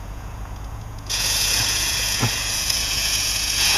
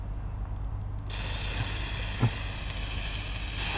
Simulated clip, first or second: first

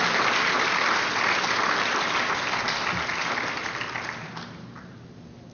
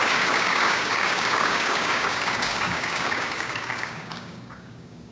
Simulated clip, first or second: second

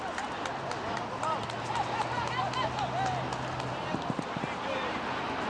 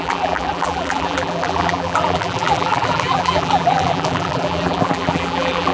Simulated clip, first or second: second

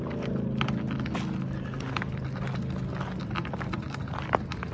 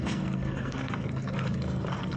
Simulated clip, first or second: second